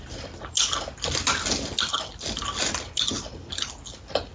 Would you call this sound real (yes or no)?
yes